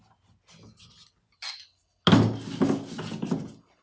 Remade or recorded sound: recorded